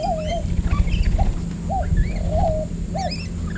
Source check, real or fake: real